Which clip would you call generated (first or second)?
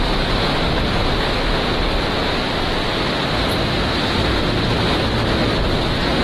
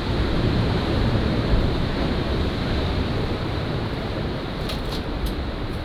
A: second